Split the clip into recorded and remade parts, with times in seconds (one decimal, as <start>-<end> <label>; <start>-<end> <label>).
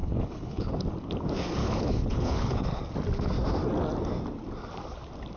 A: 0.0-0.7 remade; 0.7-1.6 recorded; 1.6-2.8 remade; 2.8-5.4 recorded